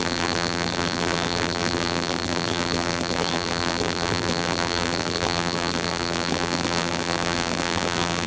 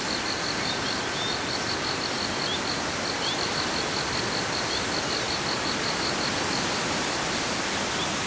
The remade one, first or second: first